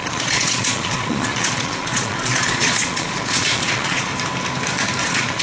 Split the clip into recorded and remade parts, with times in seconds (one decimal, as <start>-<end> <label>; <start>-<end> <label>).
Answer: 0.0-4.1 remade; 4.1-5.0 recorded; 5.0-5.4 remade